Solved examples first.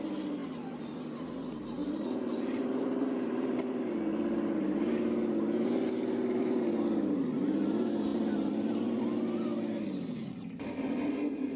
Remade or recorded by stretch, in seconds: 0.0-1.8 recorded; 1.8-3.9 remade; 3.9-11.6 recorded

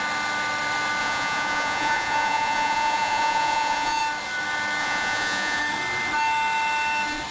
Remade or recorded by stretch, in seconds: 0.0-1.0 recorded; 1.0-4.0 remade; 4.0-4.8 recorded; 4.8-5.6 remade; 5.6-7.3 recorded

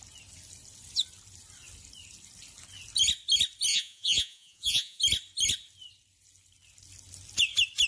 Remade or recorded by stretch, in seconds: 0.0-3.7 recorded; 3.7-5.0 remade; 5.0-7.9 recorded

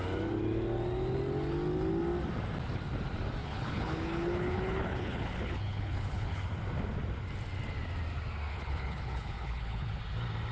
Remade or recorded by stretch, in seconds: 0.0-3.4 recorded; 3.4-6.5 remade; 6.5-8.5 recorded; 8.5-10.0 remade; 10.0-10.5 recorded